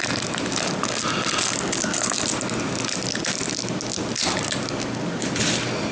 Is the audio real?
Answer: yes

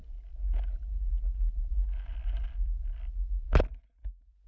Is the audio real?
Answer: yes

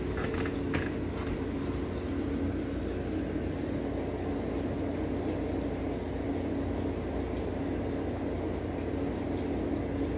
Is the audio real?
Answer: yes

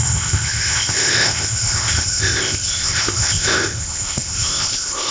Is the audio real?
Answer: no